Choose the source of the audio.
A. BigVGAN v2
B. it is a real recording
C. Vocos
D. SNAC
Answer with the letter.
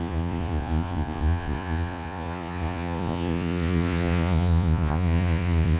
C